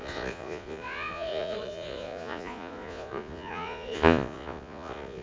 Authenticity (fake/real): fake